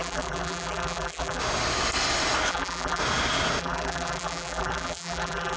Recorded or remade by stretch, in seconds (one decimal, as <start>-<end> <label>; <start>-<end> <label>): 0.0-1.4 remade; 1.4-2.5 recorded; 2.5-3.0 remade; 3.0-3.6 recorded; 3.6-5.6 remade